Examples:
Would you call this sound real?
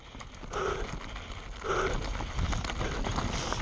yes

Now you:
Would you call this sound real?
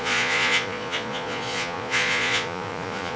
no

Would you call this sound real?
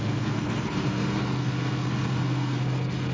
no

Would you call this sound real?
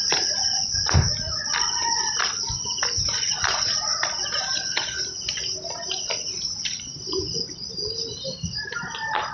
yes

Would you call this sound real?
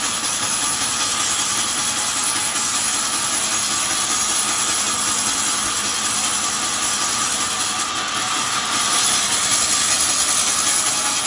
yes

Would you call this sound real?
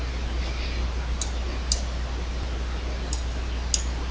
yes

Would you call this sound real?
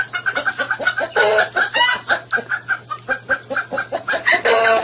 yes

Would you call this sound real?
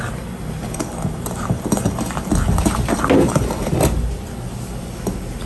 yes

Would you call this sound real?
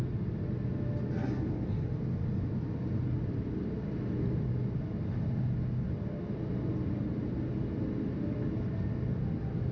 yes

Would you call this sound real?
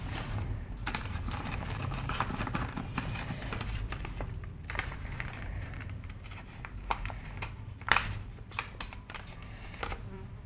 no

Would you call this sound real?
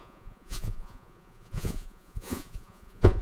no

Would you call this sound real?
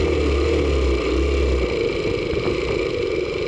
yes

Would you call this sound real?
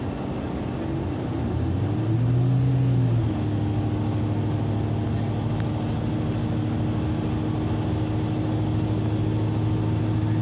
yes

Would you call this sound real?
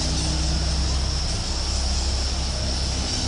yes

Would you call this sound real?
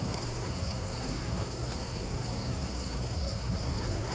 no